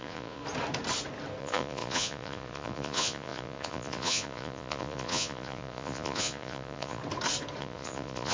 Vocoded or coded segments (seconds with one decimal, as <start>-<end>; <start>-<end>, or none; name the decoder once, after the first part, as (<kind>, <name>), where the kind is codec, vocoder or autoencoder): 0.0-0.4 (vocoder, Vocos); 1.4-7.0; 7.6-8.3